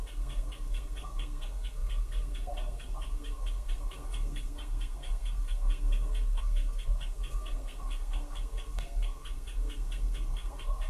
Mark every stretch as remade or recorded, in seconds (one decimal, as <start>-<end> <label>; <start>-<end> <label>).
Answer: 0.0-10.9 remade